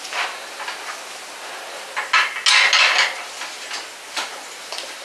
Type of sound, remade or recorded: recorded